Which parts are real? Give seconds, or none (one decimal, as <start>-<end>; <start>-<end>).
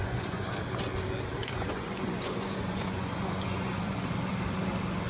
0.5-1.4; 4.1-5.1